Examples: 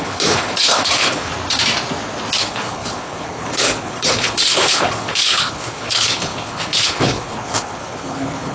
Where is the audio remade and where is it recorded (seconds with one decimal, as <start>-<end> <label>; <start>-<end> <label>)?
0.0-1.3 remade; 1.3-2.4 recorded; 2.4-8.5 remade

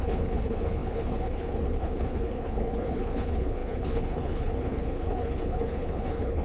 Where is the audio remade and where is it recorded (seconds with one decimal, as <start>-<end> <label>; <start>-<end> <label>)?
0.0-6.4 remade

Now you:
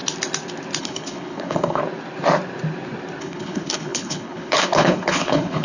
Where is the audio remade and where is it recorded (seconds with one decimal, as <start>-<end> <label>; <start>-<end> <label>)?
0.0-0.8 recorded; 0.8-1.8 remade; 1.8-3.2 recorded; 3.2-5.6 remade

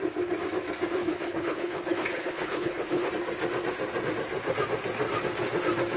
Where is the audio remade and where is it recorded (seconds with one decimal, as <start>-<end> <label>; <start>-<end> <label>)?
0.0-1.0 recorded; 1.0-3.1 remade; 3.1-6.0 recorded

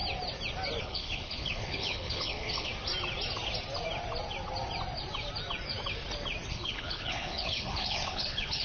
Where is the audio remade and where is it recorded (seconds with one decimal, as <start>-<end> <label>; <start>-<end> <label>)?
0.0-0.8 recorded; 0.8-2.7 remade; 2.7-6.5 recorded; 6.5-8.6 remade

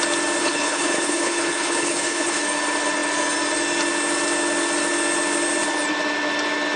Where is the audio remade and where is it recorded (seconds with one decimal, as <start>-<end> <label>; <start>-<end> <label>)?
0.0-0.4 recorded; 0.4-2.4 remade; 2.4-6.8 recorded